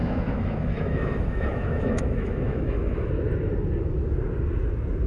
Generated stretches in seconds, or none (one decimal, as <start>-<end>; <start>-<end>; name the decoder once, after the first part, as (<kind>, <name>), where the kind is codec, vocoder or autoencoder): 0.0-3.1 (autoencoder, DAC-VAE)